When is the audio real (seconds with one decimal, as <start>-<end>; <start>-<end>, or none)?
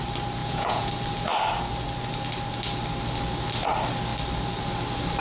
0.0-0.4; 0.9-5.2